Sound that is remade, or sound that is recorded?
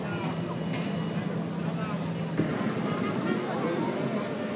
recorded